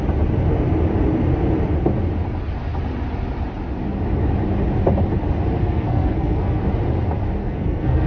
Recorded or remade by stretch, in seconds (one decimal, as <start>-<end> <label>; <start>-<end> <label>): 0.0-5.6 recorded; 5.6-6.6 remade; 6.6-7.4 recorded; 7.4-8.1 remade